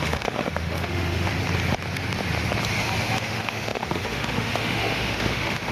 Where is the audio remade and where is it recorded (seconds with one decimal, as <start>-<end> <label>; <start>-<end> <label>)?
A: 0.0-1.3 remade; 1.3-3.2 recorded; 3.2-5.7 remade